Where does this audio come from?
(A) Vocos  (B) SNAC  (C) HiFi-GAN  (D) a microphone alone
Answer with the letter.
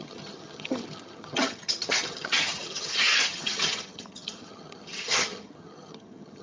C